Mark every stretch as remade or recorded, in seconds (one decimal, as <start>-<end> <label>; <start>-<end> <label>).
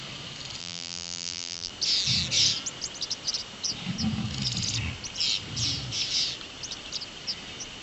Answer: 0.0-0.6 recorded; 0.6-1.7 remade; 1.7-7.8 recorded